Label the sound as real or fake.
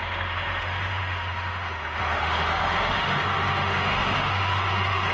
fake